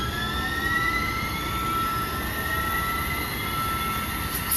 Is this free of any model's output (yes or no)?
yes